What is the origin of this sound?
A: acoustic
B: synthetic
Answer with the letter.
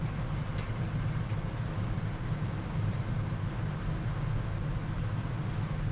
A